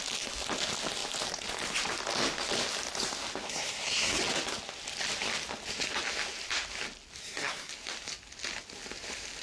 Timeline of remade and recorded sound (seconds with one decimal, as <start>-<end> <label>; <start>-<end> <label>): 0.0-3.5 recorded; 3.5-4.2 remade; 4.2-7.2 recorded; 7.2-7.7 remade; 7.7-9.4 recorded